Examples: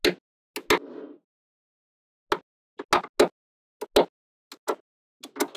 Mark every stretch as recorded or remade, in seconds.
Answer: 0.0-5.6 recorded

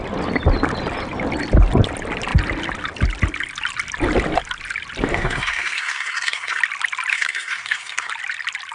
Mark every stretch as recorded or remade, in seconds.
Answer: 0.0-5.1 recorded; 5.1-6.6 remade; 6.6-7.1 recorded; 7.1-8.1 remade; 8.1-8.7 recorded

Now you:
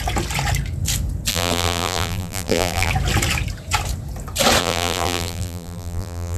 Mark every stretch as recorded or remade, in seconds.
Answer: 0.0-1.3 recorded; 1.3-2.9 remade; 2.9-4.6 recorded; 4.6-6.4 remade

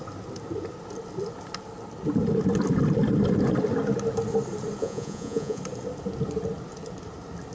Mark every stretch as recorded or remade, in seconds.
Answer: 0.0-4.8 recorded; 4.8-5.6 remade; 5.6-7.5 recorded